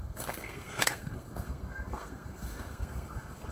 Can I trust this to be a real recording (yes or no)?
no